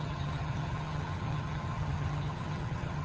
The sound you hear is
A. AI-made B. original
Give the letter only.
A